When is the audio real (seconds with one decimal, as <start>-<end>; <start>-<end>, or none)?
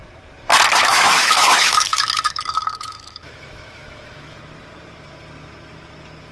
0.0-0.7; 4.4-6.3